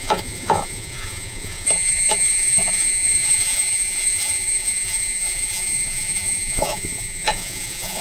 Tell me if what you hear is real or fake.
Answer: fake